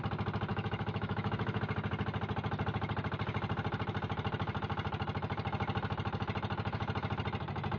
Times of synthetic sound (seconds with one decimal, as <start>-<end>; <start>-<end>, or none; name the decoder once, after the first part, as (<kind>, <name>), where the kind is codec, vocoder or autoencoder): 0.5-1.6 (autoencoder, DAC-VAE)